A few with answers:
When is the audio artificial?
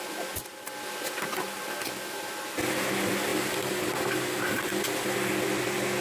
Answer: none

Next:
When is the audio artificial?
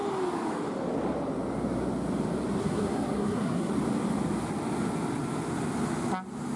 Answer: 2.6-3.7 (codec, SNAC)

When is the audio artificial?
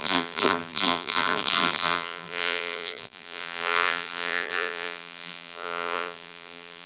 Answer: 0.0-6.9 (vocoder, BigVGAN v2)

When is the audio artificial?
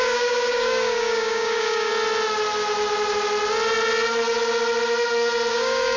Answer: 0.0-1.9 (codec, DAC); 5.5-6.0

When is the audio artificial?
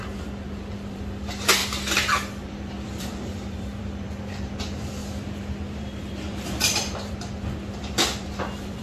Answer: 0.0-1.6 (vocoder, BigVGAN v2); 2.5-8.8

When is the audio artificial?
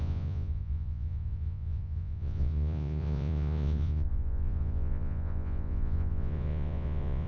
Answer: 0.0-7.3 (vocoder, Vocos)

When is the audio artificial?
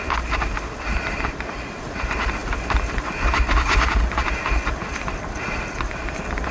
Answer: 0.9-1.8 (vocoder, BigVGAN v2)